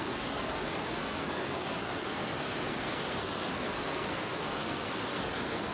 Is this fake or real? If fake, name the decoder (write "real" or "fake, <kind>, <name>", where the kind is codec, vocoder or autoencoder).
fake, codec, SNAC